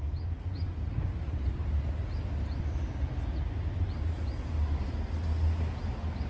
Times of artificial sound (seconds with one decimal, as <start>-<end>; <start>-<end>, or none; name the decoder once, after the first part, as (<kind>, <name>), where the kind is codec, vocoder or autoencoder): none